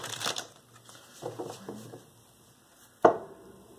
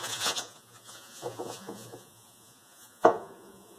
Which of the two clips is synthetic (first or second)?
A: second